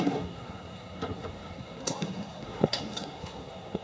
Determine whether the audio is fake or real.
fake